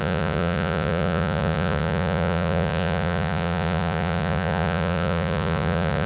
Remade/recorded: remade